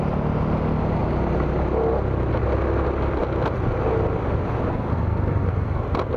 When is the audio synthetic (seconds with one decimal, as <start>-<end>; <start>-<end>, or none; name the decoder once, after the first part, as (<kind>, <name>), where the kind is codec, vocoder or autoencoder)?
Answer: 4.7-5.8 (codec, SNAC)